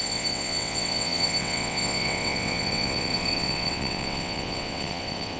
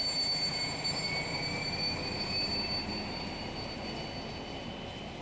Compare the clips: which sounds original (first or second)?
second